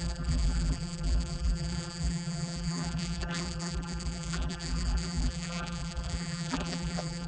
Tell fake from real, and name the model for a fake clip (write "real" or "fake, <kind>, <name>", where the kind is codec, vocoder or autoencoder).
fake, vocoder, BigVGAN v2